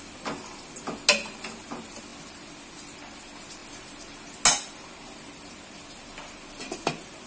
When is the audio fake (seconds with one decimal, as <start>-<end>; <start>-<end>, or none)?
none